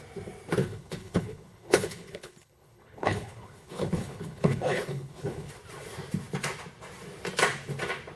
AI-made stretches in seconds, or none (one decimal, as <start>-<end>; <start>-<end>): 0.6-5.5